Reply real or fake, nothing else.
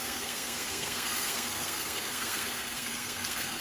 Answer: fake